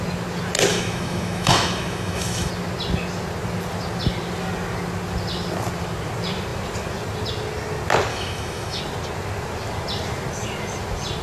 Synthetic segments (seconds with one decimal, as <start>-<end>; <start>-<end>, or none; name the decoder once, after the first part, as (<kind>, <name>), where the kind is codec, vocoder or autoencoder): 0.7-2.5 (autoencoder, DAC-VAE); 8.1-8.8